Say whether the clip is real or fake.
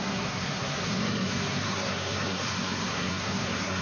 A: fake